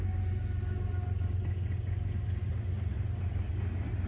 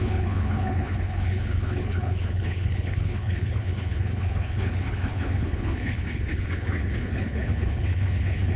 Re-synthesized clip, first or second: second